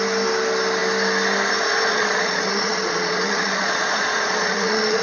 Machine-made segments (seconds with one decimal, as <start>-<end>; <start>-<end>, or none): 1.9-5.0